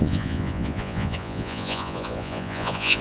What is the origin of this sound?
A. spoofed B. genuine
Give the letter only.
A